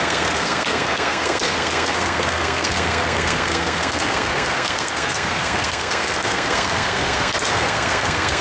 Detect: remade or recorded remade